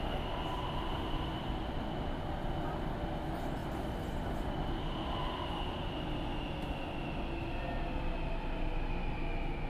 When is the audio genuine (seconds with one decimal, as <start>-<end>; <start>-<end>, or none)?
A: 0.0-9.7